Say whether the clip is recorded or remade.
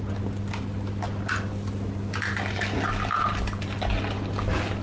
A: recorded